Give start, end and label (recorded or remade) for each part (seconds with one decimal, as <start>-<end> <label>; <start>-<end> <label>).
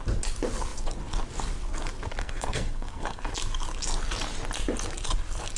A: 0.0-2.2 recorded; 2.2-3.3 remade; 3.3-5.6 recorded